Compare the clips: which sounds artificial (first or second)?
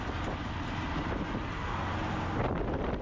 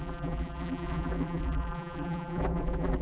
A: second